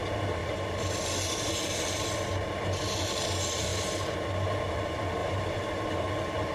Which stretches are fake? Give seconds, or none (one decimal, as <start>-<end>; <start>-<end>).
5.2-5.8